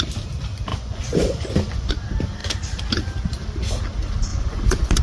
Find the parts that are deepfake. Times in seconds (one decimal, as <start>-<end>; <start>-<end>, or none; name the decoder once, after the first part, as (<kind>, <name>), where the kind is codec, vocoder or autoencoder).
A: 0.7-1.9 (vocoder, Vocos); 4.3-5.0